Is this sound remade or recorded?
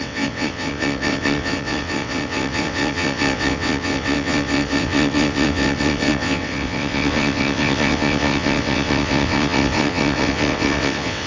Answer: remade